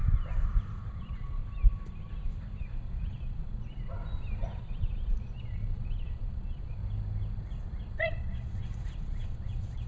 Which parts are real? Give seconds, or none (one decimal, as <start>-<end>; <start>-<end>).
0.0-1.0; 1.4-2.6; 4.0-4.6; 6.8-7.9